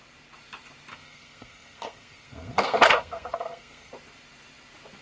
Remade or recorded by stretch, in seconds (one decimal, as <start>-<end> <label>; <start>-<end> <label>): 0.0-0.9 recorded; 0.9-3.9 remade; 3.9-5.0 recorded